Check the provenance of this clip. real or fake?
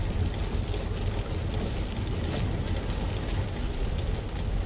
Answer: real